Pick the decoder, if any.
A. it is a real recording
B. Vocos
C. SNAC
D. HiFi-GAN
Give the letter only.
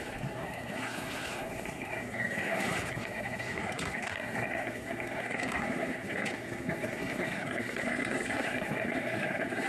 C